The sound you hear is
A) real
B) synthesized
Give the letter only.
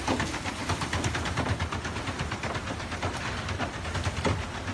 A